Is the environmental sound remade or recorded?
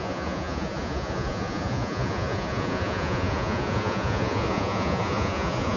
remade